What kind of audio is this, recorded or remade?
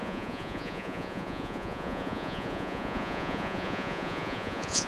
remade